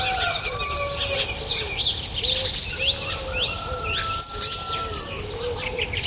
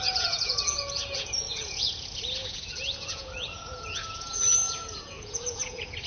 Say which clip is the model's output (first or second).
second